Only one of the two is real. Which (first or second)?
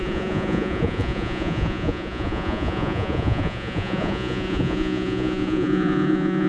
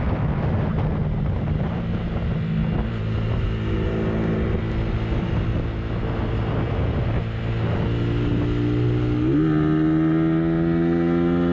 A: second